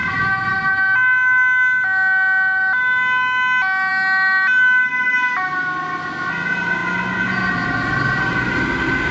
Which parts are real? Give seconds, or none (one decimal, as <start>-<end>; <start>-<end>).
0.0-9.1